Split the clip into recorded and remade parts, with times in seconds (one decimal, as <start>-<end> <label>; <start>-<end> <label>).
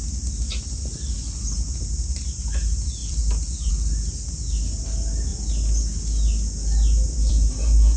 0.0-0.6 remade; 0.6-3.0 recorded; 3.0-3.7 remade; 3.7-8.0 recorded